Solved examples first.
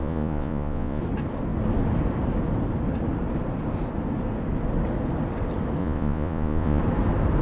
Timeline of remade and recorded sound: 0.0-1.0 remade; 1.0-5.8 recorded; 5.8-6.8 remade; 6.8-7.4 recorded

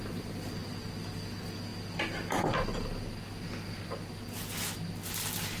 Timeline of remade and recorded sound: 0.0-5.6 recorded